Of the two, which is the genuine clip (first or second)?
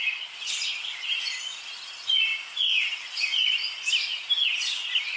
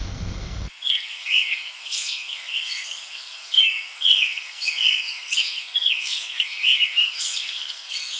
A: first